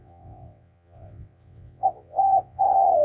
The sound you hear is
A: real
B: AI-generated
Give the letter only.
B